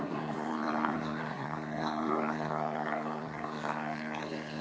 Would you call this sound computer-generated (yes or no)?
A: yes